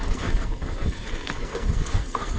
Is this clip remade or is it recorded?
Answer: remade